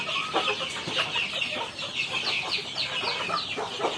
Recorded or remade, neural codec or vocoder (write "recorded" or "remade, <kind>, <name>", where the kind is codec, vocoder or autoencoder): recorded